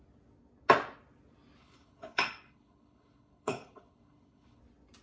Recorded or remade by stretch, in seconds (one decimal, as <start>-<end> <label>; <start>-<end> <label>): 0.0-1.6 recorded; 1.6-4.6 remade; 4.6-5.0 recorded